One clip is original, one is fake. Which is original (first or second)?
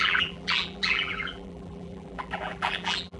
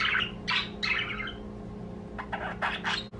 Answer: second